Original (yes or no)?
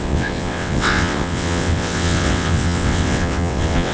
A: no